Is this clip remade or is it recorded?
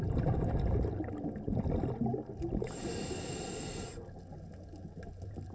recorded